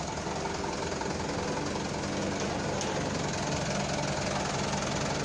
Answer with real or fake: real